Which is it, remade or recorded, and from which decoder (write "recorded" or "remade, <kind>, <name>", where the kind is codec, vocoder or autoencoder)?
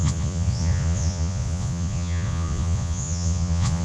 remade, vocoder, Vocos